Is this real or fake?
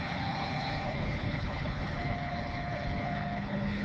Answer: fake